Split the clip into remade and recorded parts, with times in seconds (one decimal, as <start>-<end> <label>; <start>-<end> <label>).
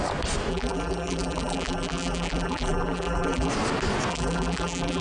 0.0-0.5 recorded; 0.5-3.5 remade; 3.5-4.1 recorded; 4.1-5.0 remade